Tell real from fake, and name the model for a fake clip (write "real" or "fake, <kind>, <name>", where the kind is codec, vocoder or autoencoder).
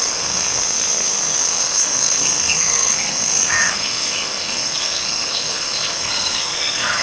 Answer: fake, codec, SNAC